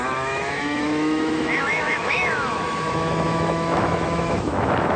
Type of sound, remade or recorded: remade